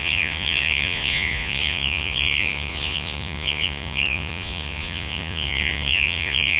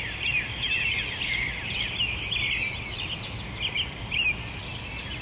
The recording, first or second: second